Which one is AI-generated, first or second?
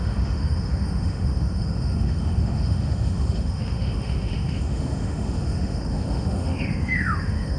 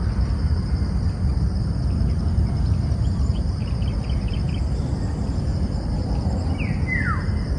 first